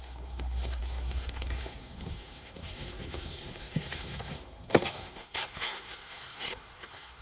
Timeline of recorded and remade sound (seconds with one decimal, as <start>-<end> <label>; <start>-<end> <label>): 0.0-7.2 remade